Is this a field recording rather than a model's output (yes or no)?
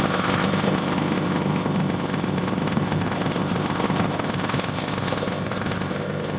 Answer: no